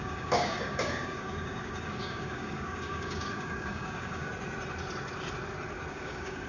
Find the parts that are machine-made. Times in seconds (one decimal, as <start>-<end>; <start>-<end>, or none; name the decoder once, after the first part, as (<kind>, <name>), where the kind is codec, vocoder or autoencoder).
0.0-4.3 (codec, DAC); 5.9-6.5